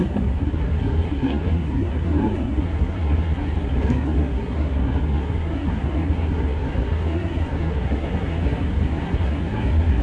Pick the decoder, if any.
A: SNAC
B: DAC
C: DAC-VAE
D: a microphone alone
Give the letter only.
A